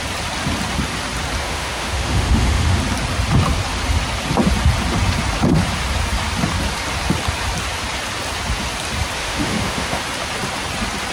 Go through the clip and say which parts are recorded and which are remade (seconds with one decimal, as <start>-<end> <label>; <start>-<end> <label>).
0.0-1.4 recorded; 1.4-2.8 remade; 2.8-9.2 recorded; 9.2-10.0 remade; 10.0-11.1 recorded